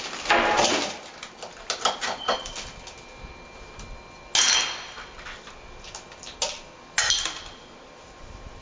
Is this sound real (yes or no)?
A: yes